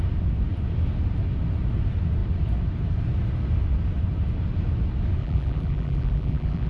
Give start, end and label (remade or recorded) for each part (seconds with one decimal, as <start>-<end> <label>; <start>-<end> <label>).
0.0-5.2 recorded; 5.2-6.7 remade